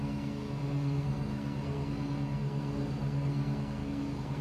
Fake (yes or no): yes